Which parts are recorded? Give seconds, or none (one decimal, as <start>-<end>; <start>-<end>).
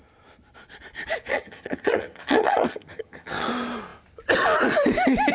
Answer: 0.0-1.3; 3.5-5.3